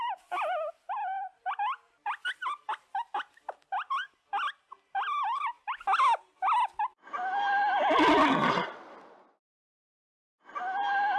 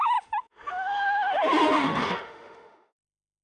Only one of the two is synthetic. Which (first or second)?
second